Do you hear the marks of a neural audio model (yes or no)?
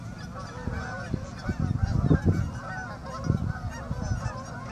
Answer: no